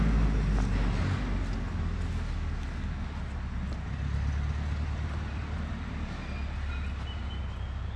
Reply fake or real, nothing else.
real